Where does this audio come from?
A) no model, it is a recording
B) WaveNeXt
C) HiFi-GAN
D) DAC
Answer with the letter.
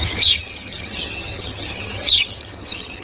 C